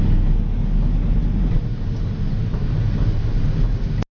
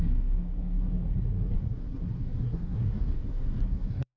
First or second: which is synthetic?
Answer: second